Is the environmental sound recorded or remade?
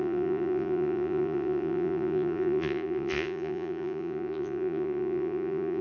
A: remade